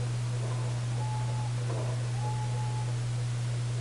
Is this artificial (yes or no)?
no